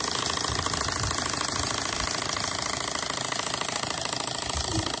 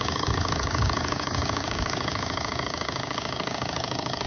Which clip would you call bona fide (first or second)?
first